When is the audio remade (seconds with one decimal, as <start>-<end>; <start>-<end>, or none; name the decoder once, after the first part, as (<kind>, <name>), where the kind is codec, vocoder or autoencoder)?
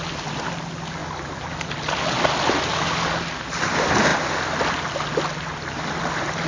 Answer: 2.7-3.4 (codec, DAC)